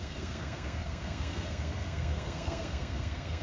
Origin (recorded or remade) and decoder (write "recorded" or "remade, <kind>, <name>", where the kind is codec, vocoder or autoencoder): remade, codec, SNAC